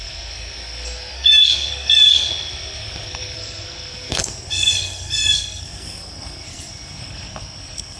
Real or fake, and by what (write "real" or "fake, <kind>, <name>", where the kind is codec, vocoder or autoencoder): fake, codec, SNAC